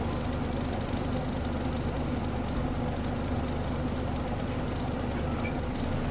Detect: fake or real real